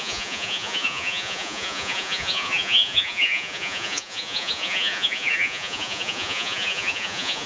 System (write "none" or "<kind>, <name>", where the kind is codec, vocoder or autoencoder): vocoder, Vocos